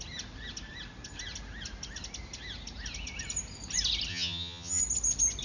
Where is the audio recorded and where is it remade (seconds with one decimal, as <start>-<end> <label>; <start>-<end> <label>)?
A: 0.0-4.1 recorded; 4.1-4.8 remade; 4.8-5.4 recorded